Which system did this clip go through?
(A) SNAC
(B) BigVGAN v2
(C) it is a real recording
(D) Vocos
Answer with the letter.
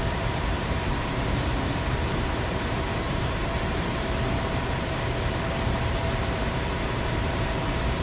B